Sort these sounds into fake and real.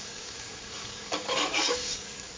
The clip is fake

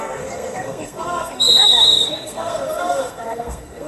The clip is fake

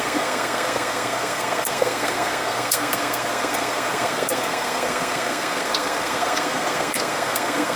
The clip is fake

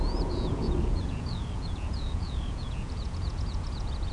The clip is fake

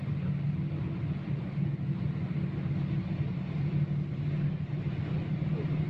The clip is real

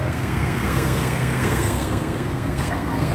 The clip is fake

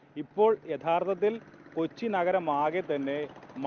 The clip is real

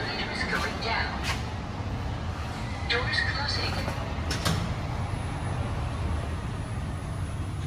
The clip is real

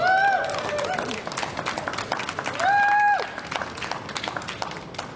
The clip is real